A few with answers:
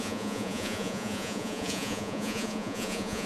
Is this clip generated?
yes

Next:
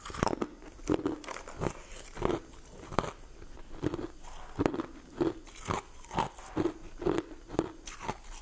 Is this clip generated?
no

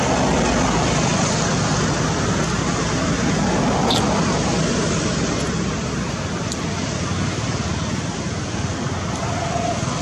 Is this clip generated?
no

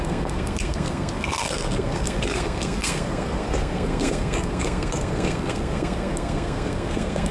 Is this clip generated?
yes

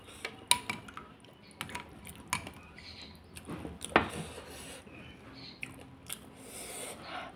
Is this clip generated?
no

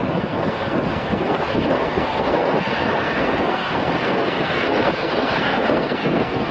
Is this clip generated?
yes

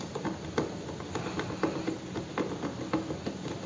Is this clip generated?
no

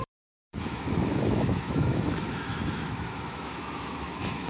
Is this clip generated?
yes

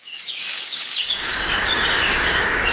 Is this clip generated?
yes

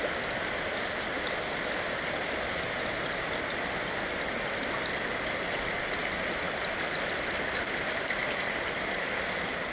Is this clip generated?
no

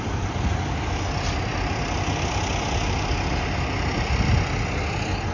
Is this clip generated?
no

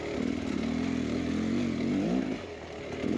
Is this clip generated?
no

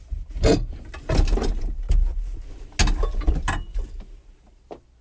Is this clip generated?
no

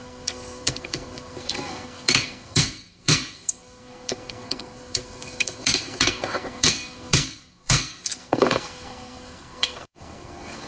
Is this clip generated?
yes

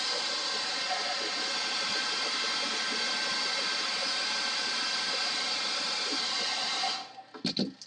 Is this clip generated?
no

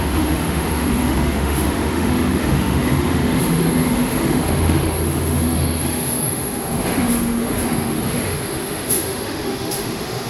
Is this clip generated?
yes